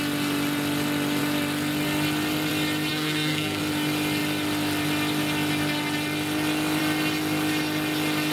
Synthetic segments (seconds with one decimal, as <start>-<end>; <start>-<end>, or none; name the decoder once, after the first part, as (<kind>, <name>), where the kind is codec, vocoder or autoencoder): 2.9-3.6 (codec, SNAC)